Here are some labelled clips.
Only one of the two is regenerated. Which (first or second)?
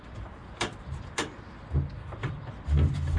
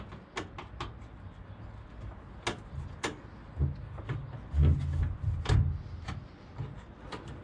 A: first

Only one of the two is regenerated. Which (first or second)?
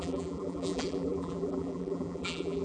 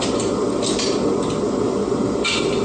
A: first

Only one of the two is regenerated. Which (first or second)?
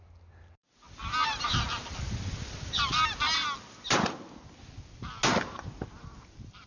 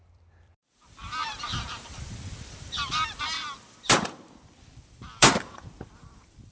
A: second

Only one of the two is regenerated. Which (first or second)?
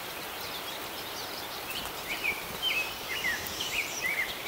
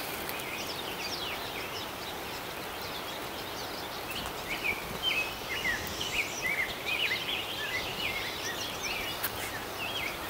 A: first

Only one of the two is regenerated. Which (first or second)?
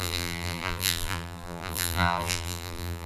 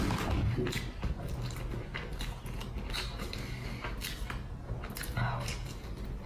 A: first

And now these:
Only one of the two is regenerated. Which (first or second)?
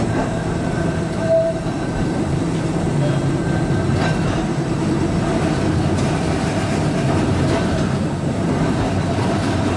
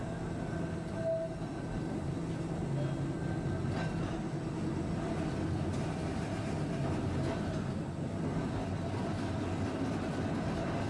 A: first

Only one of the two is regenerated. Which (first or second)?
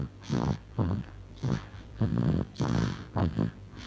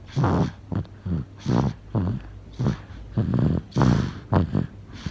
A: first